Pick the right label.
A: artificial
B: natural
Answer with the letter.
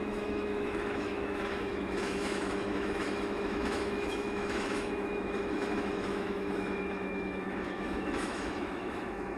A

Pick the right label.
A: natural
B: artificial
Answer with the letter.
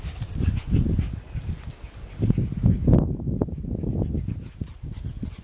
A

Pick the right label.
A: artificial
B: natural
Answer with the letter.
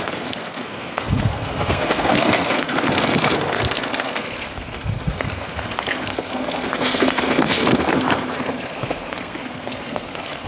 A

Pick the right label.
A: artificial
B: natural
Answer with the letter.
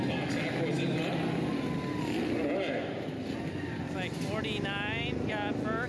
B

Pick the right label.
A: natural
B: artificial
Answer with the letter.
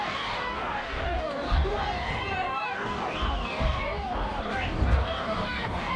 B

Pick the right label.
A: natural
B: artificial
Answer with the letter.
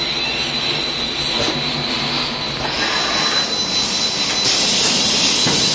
A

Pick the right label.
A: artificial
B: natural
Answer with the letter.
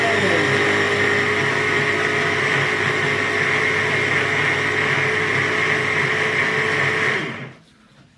B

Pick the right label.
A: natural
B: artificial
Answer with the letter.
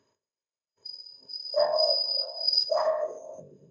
B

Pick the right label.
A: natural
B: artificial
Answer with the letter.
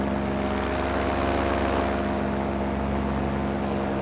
A